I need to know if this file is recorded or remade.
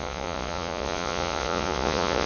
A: remade